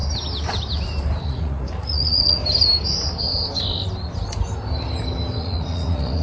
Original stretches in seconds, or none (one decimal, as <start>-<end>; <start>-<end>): 0.0-1.2; 2.4-5.4